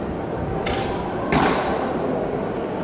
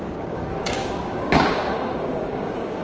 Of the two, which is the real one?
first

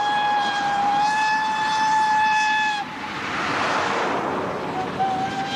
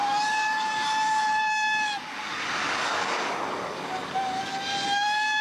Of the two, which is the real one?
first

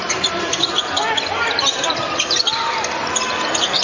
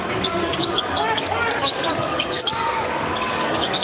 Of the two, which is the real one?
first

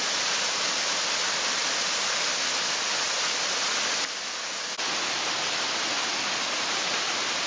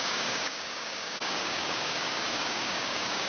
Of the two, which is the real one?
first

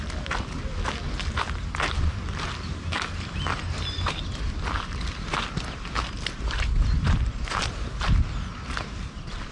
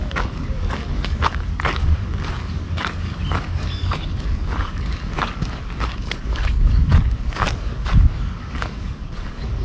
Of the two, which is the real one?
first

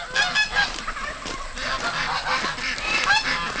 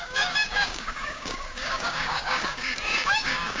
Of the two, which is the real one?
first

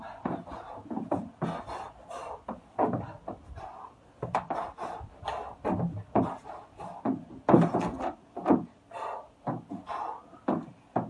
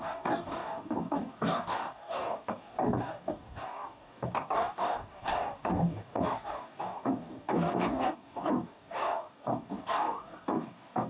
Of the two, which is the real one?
first